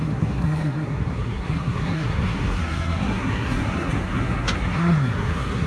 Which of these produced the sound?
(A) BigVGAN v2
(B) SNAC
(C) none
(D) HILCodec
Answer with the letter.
B